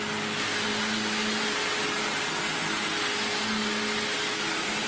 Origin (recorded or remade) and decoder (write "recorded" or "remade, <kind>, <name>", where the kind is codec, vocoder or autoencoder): recorded